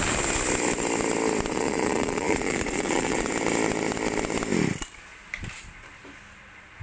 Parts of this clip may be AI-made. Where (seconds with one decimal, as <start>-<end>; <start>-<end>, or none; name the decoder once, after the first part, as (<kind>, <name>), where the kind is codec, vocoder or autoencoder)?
1.5-3.3 (vocoder, Vocos)